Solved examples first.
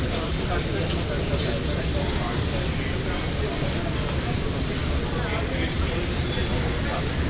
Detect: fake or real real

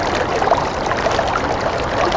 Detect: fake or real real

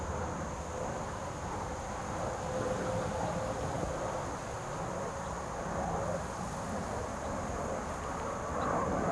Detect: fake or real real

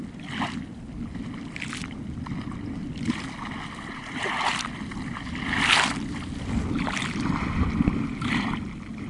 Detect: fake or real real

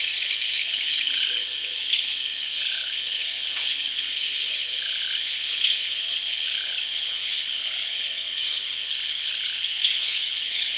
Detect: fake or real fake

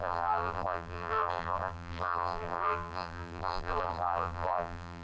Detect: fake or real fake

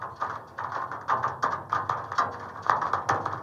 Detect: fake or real real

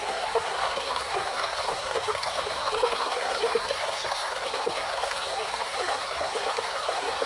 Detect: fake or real fake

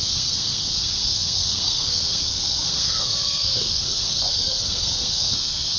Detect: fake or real fake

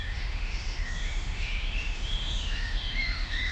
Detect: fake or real fake